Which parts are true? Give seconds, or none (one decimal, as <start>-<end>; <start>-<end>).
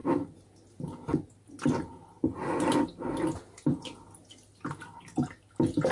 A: 0.0-5.9